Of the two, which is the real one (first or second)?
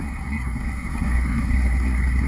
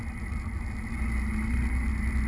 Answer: second